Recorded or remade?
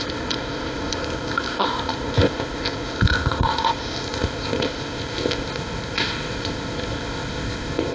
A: remade